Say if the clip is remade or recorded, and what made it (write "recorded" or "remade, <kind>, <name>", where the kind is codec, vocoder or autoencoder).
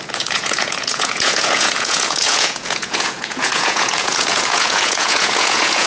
remade, vocoder, Vocos